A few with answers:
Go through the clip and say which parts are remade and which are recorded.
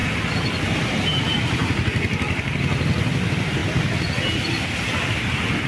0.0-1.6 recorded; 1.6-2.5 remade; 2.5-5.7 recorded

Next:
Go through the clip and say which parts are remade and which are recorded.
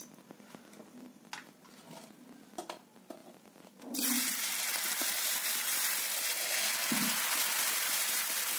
0.0-3.2 recorded; 3.2-6.7 remade; 6.7-7.8 recorded; 7.8-8.6 remade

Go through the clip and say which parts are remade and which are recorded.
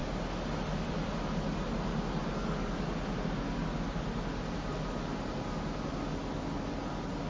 0.0-7.3 recorded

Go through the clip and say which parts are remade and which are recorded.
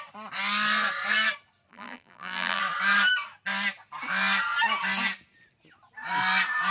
0.0-1.7 recorded; 1.7-2.6 remade; 2.6-6.7 recorded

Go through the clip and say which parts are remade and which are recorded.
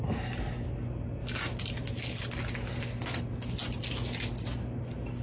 0.0-5.2 recorded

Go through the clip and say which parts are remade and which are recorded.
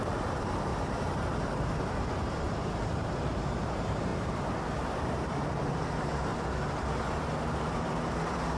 0.0-0.7 remade; 0.7-2.1 recorded; 2.1-6.3 remade; 6.3-7.4 recorded; 7.4-8.6 remade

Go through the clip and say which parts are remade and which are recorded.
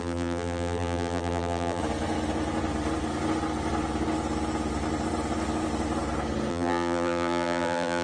0.0-1.8 remade; 1.8-6.5 recorded; 6.5-8.0 remade